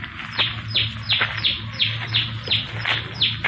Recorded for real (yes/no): yes